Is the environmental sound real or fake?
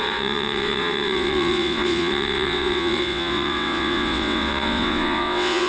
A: fake